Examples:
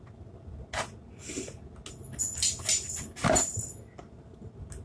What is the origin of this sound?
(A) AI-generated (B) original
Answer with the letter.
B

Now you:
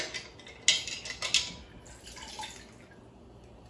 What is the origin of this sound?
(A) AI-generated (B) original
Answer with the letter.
B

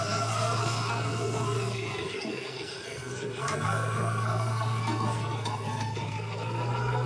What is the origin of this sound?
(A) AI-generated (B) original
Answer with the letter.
A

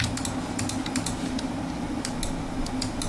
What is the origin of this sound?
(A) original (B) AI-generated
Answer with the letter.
A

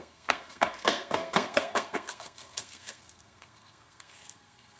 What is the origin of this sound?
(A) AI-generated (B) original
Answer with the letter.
A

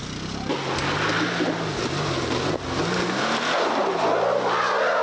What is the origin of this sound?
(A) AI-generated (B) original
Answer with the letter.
B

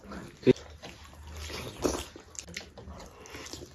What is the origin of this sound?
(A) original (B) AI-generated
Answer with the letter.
A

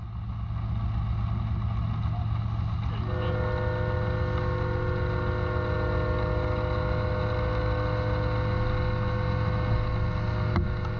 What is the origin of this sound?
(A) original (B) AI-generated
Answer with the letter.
A